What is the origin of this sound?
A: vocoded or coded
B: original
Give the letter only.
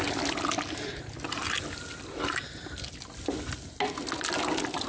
B